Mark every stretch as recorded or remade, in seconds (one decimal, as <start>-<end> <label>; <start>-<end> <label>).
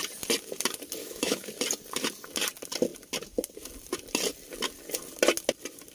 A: 0.0-1.0 recorded; 1.0-1.5 remade; 1.5-5.9 recorded